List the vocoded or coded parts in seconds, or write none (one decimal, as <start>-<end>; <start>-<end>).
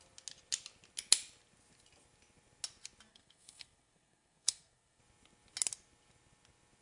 3.1-5.0